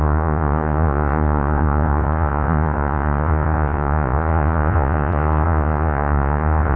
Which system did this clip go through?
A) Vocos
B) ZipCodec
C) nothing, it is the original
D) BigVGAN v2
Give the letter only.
A